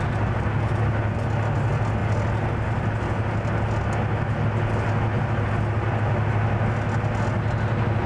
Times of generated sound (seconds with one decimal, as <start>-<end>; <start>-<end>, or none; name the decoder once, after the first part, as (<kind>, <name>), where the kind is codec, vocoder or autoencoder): none